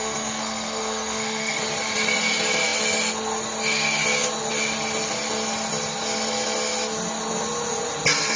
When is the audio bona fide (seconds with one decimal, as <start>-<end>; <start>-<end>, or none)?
1.6-8.4